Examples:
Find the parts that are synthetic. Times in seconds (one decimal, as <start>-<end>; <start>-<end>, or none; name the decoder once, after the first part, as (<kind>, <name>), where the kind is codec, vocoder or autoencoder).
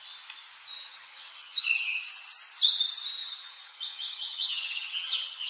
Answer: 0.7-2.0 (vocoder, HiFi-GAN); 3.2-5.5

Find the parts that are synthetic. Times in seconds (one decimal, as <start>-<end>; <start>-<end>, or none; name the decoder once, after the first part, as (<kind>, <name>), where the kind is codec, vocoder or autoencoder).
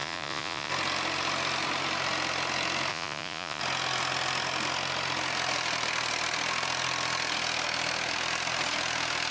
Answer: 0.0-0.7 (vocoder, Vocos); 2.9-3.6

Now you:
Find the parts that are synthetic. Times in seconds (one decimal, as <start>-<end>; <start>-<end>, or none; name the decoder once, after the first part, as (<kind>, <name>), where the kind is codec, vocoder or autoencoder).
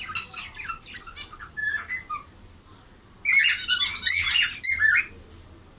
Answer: none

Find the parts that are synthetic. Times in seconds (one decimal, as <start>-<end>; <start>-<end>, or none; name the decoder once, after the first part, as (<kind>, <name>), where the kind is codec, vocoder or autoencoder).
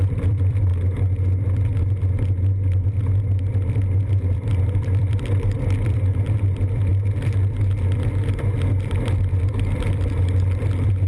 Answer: 0.0-0.7 (vocoder, BigVGAN v2); 4.0-6.9; 9.4-11.1